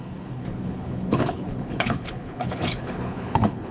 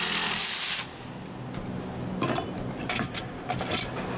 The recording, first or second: second